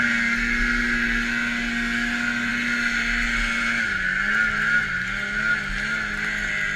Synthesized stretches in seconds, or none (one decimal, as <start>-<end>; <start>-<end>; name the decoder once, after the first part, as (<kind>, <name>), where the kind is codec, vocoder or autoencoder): none